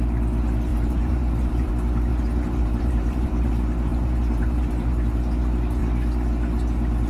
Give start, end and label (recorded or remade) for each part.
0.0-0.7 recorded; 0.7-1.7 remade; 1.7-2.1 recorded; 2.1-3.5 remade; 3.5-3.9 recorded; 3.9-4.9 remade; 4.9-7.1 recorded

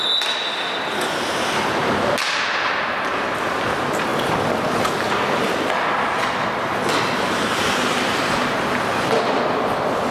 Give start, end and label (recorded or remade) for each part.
0.0-10.1 recorded

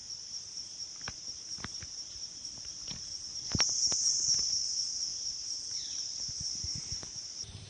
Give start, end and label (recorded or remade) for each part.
0.0-2.7 remade; 2.7-5.1 recorded; 5.1-7.7 remade

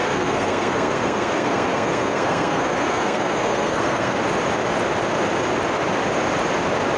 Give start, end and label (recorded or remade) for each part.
0.0-4.2 remade; 4.2-7.0 recorded